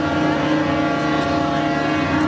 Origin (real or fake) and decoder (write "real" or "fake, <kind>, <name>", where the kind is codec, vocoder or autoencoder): real